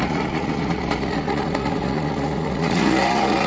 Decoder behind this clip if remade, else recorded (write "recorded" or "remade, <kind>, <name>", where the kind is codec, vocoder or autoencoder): remade, vocoder, Vocos